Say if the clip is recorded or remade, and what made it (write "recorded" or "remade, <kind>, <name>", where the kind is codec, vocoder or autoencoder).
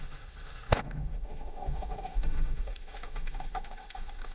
remade, autoencoder, DAC-VAE